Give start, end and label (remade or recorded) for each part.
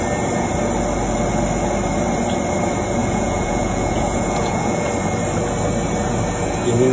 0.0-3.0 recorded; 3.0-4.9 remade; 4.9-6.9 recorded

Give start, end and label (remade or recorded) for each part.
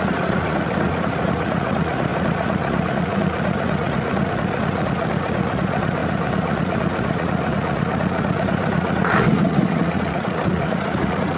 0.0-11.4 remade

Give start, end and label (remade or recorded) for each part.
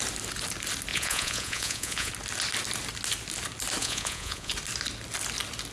0.0-0.9 recorded; 0.9-2.1 remade; 2.1-3.8 recorded; 3.8-4.5 remade; 4.5-5.7 recorded